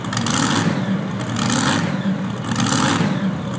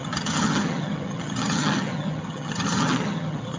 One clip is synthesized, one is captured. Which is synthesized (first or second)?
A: second